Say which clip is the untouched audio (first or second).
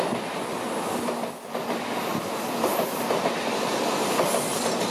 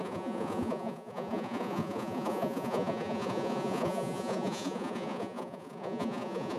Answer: first